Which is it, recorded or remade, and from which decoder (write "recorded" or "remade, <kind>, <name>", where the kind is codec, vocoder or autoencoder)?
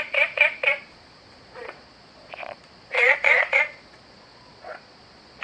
remade, vocoder, Vocos